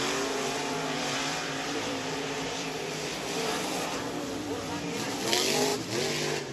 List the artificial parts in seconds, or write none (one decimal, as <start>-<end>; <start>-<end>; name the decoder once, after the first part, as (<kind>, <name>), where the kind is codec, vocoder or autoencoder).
0.6-4.5 (vocoder, BigVGAN v2)